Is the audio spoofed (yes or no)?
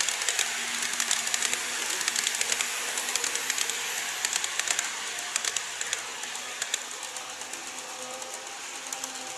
no